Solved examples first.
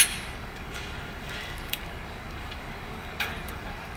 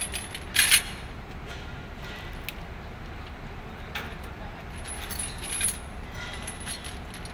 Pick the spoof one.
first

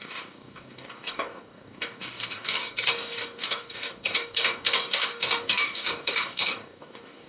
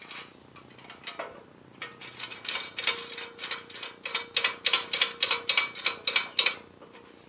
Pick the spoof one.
first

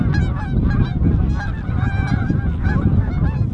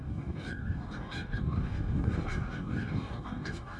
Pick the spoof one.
second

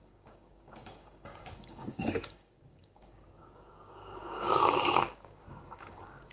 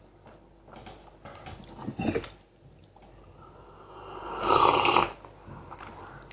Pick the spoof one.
first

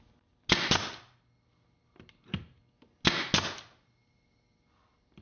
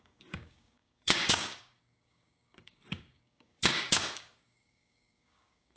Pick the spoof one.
second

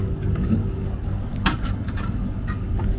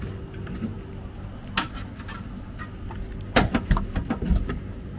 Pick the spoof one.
first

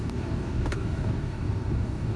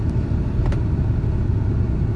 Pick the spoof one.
first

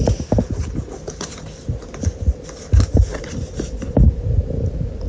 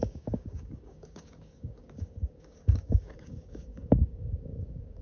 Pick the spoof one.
second